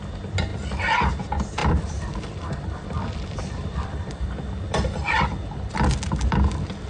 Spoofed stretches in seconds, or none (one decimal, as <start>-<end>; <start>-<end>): 1.6-5.7